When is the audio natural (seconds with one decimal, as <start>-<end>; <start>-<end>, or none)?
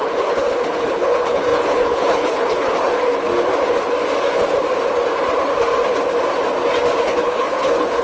3.3-7.0